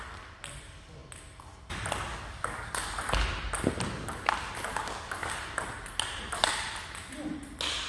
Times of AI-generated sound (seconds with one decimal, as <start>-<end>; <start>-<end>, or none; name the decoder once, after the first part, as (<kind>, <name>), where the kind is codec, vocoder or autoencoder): 2.1-2.9 (codec, DAC); 4.7-5.3